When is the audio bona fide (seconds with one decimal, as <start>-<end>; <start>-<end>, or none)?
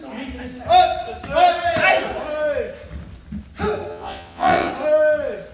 0.0-3.9; 4.7-5.5